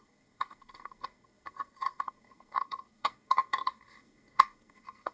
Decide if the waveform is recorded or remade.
remade